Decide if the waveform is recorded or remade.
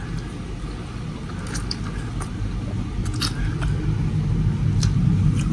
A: recorded